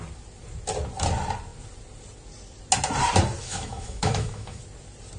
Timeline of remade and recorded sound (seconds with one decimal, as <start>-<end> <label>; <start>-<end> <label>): 0.0-3.4 recorded; 3.4-4.6 remade; 4.6-5.2 recorded

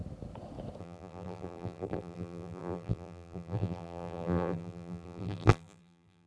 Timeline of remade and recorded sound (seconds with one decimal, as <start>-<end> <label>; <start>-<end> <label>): 0.0-0.8 recorded; 0.8-6.3 remade

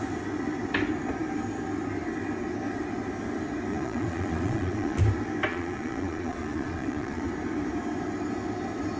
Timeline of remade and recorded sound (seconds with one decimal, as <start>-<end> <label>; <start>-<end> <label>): 0.0-3.7 recorded; 3.7-5.0 remade; 5.0-5.5 recorded; 5.5-7.3 remade; 7.3-9.0 recorded